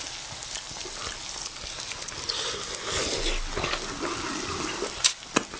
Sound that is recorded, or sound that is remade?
recorded